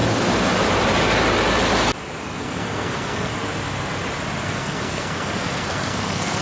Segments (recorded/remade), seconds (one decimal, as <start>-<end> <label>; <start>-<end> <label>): 0.0-2.4 recorded; 2.4-3.3 remade; 3.3-4.4 recorded; 4.4-6.4 remade